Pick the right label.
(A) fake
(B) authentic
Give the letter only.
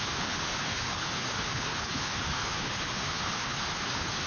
A